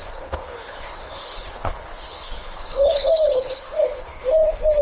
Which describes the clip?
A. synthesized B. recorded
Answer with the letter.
A